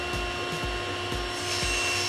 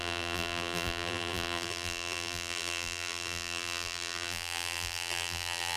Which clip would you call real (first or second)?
first